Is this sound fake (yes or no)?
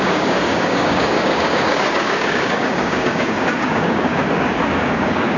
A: yes